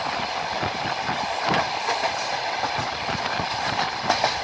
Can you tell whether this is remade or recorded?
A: recorded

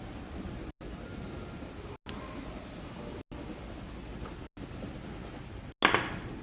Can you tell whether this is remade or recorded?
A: recorded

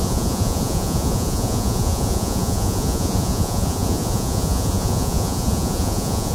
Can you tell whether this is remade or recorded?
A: remade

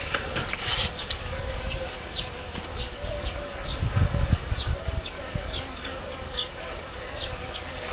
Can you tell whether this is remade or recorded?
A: remade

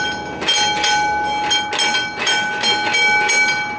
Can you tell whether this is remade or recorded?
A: recorded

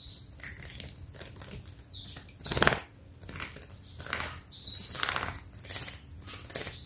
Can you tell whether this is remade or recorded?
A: recorded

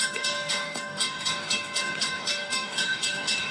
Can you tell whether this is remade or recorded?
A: remade